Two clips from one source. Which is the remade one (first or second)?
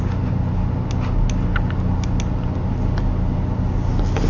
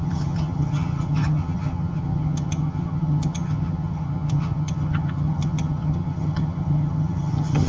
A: second